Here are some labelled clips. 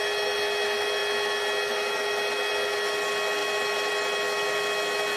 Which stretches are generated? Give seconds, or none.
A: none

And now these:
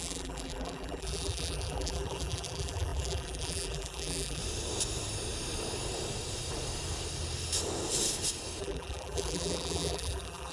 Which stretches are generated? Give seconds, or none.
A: 0.0-4.4; 8.6-10.5

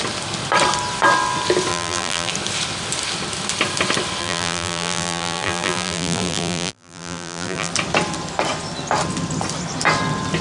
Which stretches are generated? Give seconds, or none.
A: 1.7-2.3; 4.2-7.7

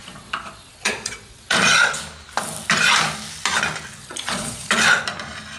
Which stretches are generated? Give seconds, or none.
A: 0.0-1.9; 4.0-4.7

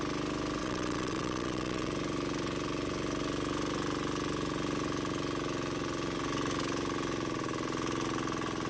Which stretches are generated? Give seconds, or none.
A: 0.6-1.9

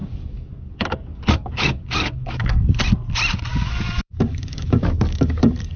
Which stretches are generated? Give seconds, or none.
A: 0.0-2.8; 3.5-5.8